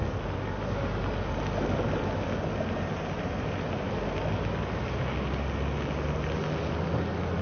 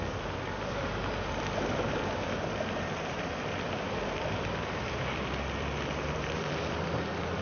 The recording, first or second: first